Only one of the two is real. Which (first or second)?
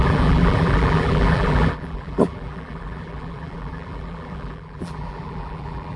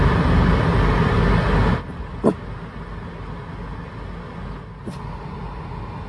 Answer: second